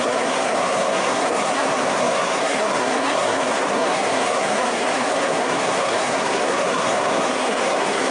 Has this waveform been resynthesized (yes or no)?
yes